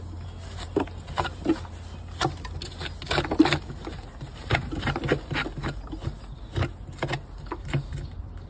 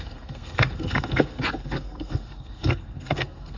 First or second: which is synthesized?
second